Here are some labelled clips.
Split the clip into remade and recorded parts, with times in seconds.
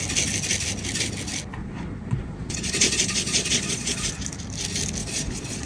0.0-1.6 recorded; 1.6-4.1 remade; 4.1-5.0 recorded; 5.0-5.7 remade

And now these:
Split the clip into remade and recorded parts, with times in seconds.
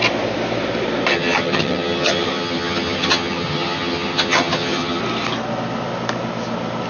0.0-1.1 recorded; 1.1-5.0 remade; 5.0-6.9 recorded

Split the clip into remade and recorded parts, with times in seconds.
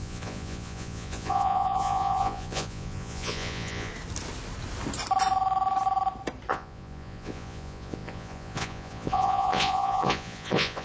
0.0-3.9 remade; 3.9-6.5 recorded; 6.5-10.8 remade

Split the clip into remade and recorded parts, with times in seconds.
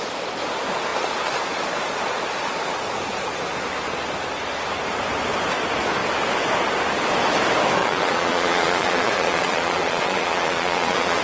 0.0-7.8 recorded; 7.8-11.2 remade